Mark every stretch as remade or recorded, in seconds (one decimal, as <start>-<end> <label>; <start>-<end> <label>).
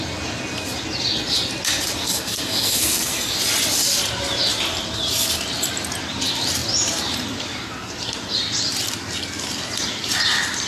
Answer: 0.0-2.0 recorded; 2.0-3.4 remade; 3.4-10.7 recorded